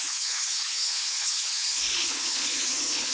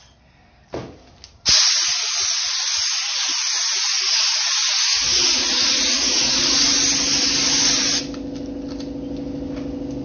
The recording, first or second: second